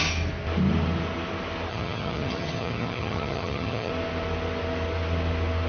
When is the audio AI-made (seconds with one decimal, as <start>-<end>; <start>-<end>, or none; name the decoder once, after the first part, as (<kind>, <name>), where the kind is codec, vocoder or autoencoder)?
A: 1.7-3.9 (vocoder, HiFi-GAN)